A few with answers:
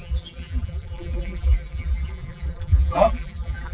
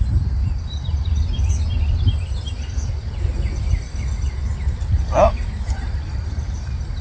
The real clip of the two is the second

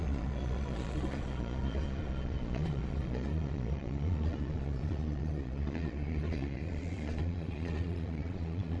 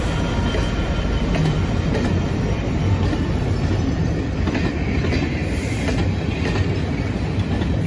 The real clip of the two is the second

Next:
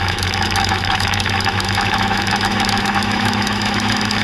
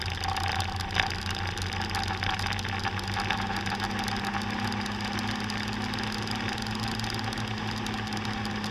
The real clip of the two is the second